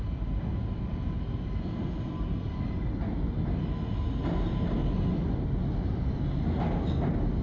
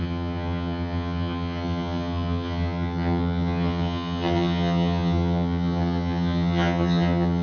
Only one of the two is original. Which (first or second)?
first